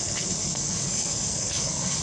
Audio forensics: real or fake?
fake